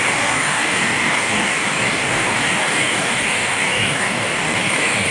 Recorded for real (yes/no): no